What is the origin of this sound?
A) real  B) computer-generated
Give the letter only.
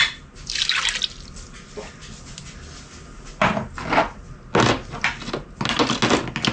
A